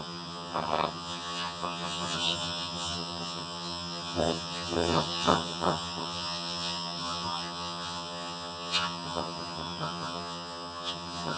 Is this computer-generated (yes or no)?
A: yes